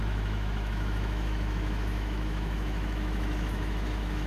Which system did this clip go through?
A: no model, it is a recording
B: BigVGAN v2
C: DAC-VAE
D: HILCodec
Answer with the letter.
C